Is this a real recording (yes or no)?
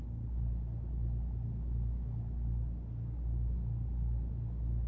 yes